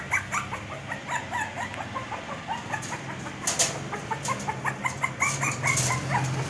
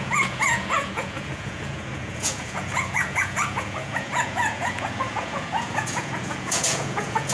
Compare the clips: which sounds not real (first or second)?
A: second